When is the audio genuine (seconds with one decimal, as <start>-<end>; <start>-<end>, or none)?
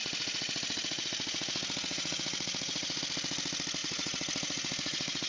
3.0-3.8